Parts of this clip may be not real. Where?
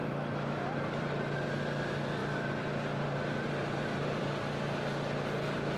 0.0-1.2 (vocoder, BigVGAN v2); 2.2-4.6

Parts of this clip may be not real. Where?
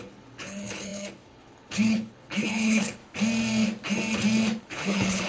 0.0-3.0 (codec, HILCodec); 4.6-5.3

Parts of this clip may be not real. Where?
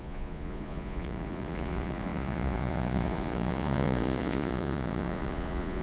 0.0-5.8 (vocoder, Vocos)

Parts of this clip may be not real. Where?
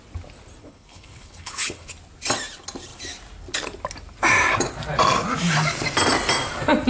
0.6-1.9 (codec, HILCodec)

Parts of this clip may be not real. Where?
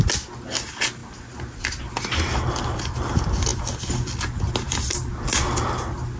none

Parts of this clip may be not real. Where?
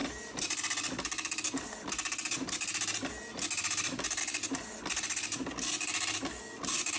none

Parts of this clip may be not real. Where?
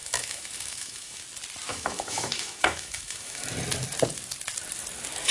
0.0-1.2 (autoencoder, DAC-VAE); 1.7-3.5